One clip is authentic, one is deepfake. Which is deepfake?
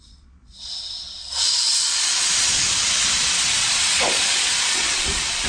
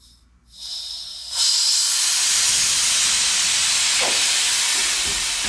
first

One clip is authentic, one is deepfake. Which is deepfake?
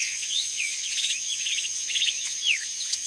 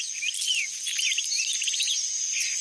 first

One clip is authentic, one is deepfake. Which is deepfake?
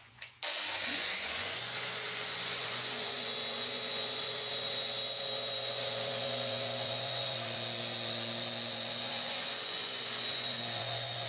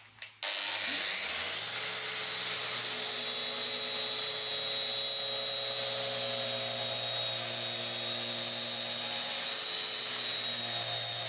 first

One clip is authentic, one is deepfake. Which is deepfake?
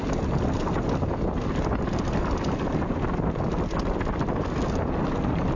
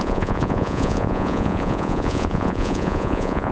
second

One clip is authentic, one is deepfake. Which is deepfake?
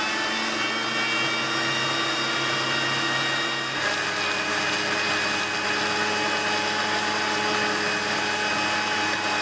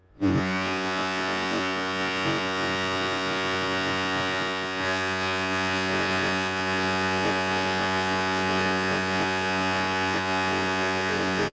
second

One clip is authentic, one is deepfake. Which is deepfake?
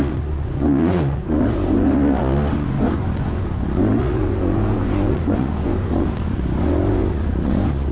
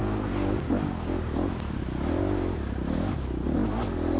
first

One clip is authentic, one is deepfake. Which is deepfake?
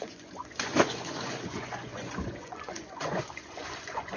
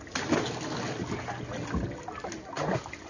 first